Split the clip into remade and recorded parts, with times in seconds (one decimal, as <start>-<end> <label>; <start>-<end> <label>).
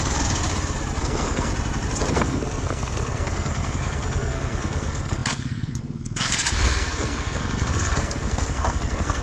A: 0.0-0.4 remade; 0.4-1.0 recorded; 1.0-1.5 remade; 1.5-2.1 recorded; 2.1-9.2 remade